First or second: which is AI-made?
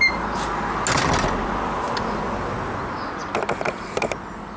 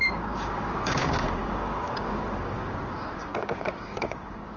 second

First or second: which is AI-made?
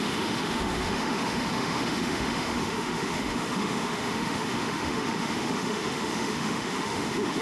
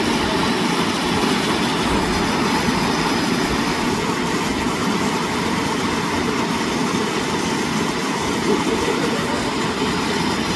first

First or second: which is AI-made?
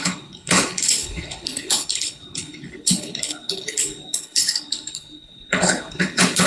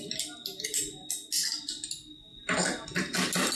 first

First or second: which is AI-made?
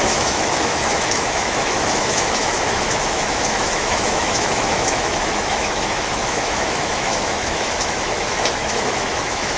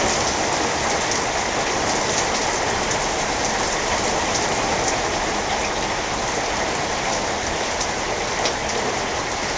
first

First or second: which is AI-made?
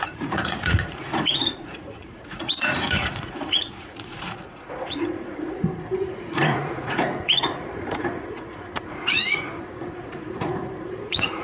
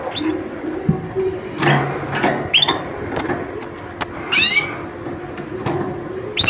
first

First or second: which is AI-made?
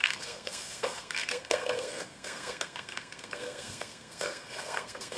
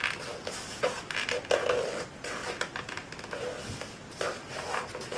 first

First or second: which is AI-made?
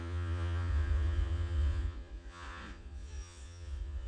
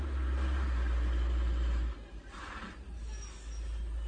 first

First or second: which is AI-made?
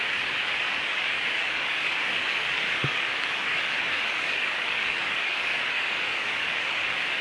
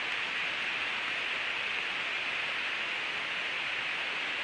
first